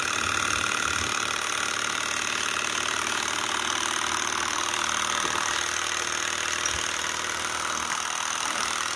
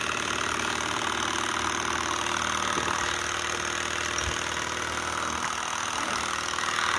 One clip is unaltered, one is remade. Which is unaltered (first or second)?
second